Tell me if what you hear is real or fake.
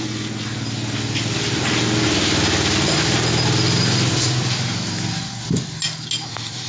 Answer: real